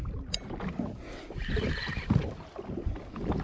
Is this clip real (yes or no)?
yes